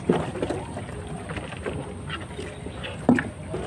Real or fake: real